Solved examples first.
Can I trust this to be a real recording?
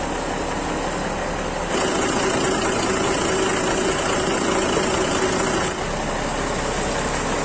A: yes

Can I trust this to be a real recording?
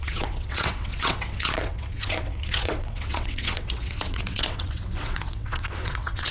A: no